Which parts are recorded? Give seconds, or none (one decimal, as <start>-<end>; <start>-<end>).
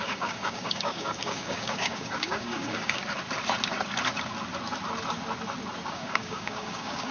3.0-5.9